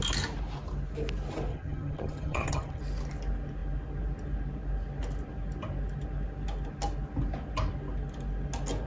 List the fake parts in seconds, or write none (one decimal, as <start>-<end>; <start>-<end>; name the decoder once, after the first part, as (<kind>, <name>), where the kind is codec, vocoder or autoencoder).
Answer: 1.5-2.8 (vocoder, HiFi-GAN)